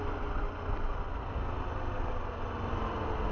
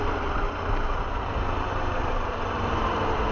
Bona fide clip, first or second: first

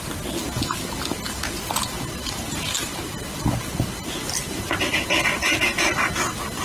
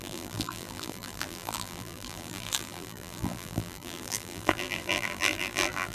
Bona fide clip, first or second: first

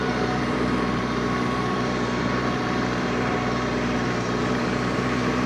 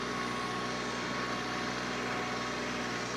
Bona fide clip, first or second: second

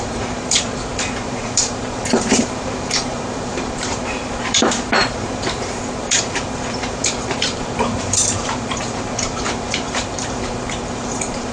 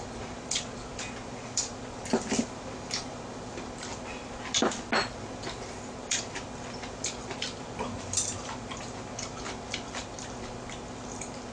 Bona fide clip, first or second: second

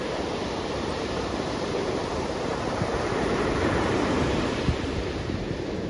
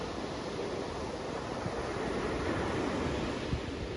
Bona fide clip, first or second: second